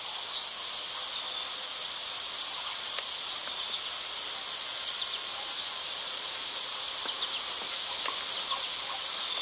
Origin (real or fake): real